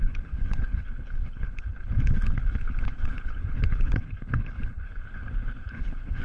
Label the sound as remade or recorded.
remade